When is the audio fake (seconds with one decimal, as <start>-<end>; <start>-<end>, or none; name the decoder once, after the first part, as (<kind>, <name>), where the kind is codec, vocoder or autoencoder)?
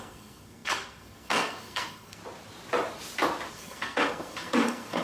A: 0.0-2.2 (codec, SNAC); 3.5-5.0